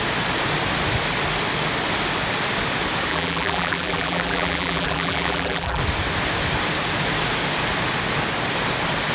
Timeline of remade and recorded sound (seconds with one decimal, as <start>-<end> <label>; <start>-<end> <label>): 0.0-3.1 recorded; 3.1-5.8 remade; 5.8-9.1 recorded